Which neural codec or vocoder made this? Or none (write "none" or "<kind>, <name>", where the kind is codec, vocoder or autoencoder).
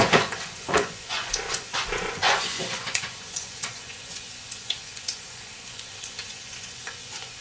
vocoder, Vocos